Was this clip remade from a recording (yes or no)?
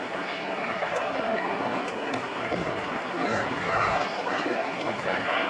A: yes